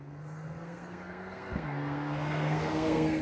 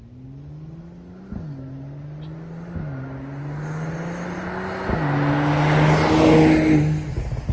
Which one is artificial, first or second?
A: first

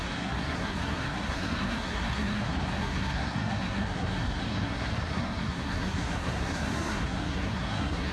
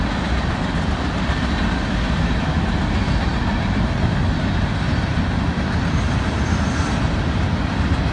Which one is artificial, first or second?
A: first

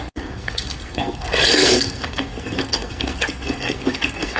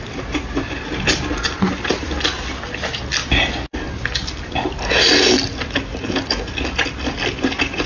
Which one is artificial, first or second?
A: first